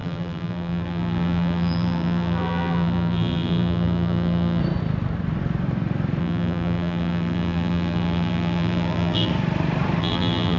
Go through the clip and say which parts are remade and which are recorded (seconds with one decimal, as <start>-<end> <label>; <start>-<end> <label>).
0.0-4.6 remade; 4.6-6.2 recorded; 6.2-9.3 remade; 9.3-10.0 recorded; 10.0-10.6 remade